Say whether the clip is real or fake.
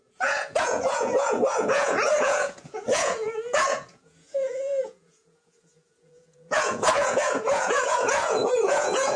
fake